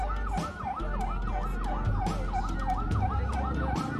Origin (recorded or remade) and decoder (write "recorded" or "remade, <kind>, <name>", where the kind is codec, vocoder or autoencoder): recorded